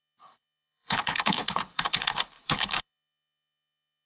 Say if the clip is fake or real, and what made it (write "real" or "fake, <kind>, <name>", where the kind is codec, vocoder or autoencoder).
fake, codec, HILCodec